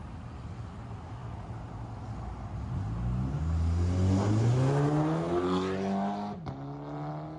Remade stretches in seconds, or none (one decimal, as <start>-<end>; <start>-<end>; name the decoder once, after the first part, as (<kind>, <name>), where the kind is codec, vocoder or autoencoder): none